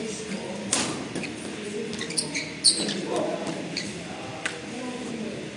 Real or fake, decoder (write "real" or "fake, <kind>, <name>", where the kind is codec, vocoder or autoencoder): real